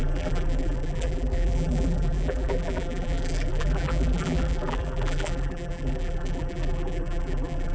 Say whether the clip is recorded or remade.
remade